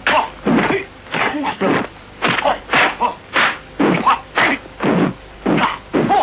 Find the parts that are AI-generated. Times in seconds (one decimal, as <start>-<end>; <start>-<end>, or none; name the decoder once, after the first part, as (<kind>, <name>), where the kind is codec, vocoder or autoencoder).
1.1-1.7 (codec, SNAC)